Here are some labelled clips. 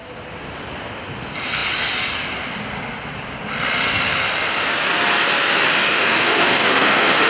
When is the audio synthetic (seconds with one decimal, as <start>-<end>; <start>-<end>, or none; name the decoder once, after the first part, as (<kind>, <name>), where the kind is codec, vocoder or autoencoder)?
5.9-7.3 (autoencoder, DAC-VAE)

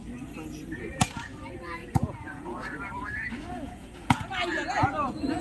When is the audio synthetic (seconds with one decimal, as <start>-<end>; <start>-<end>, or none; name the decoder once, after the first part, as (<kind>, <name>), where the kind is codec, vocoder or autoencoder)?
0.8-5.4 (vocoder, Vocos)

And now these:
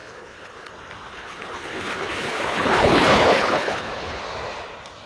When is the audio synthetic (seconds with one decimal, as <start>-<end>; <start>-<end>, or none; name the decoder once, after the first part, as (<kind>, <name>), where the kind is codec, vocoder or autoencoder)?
0.0-0.7 (codec, HILCodec); 1.1-4.2

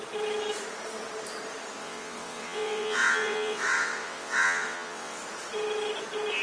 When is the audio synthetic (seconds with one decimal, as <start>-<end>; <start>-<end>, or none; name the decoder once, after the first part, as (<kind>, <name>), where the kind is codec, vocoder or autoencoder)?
1.8-5.2 (vocoder, WaveNeXt)

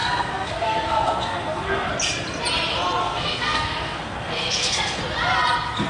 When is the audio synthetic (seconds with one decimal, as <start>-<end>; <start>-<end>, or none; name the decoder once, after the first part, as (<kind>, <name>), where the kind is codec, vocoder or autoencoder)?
0.0-1.9 (codec, SNAC); 3.0-5.0